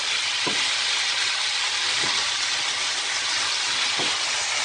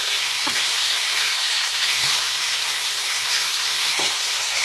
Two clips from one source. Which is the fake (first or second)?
second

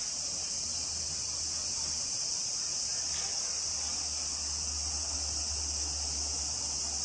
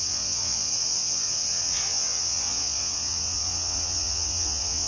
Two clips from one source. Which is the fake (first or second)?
second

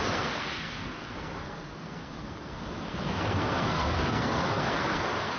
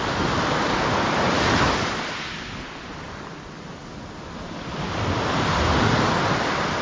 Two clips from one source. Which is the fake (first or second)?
first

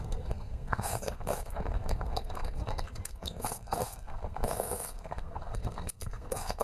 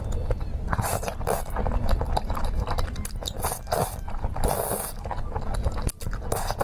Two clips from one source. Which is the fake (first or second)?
first